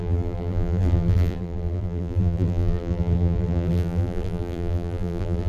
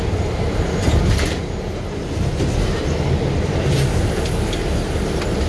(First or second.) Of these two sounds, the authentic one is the second